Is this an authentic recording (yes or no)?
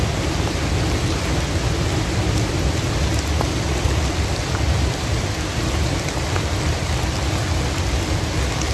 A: yes